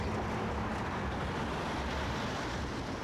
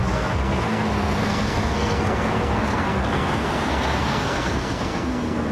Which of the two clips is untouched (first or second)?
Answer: first